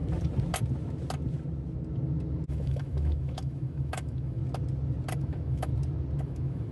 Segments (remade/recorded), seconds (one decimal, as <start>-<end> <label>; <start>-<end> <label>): 0.0-2.5 recorded; 2.5-4.4 remade; 4.4-5.2 recorded; 5.2-5.7 remade; 5.7-6.2 recorded; 6.2-6.7 remade